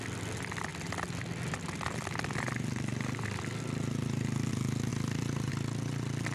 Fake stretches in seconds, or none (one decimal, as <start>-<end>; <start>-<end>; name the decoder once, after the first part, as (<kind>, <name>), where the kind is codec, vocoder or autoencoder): 4.9-5.5 (vocoder, BigVGAN v2)